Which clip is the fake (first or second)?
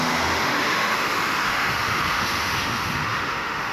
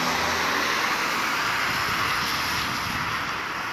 first